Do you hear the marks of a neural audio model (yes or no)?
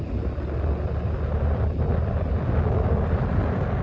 no